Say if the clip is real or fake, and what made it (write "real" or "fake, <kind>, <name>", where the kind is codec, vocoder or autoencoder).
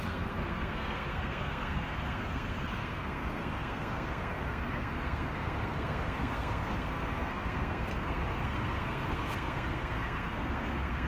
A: fake, codec, SNAC